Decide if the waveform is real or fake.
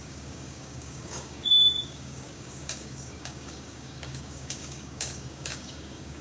fake